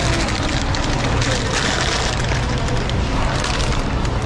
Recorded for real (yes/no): yes